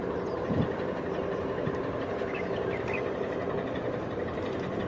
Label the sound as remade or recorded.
remade